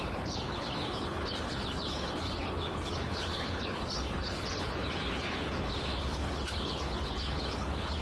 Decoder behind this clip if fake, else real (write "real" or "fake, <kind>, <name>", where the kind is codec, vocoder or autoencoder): fake, codec, HILCodec